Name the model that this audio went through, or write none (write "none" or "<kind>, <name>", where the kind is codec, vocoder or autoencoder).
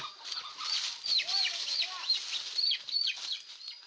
none